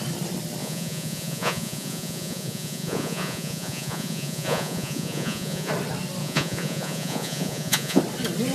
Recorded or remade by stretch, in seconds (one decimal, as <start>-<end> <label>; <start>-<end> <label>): 0.0-0.6 recorded; 0.6-5.7 remade; 5.7-6.2 recorded; 6.2-8.0 remade; 8.0-8.5 recorded